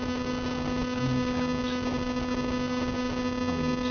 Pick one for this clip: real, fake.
real